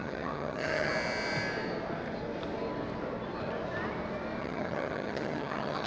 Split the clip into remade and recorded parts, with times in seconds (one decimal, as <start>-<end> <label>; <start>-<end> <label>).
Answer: 0.0-0.9 remade; 0.9-4.4 recorded; 4.4-5.9 remade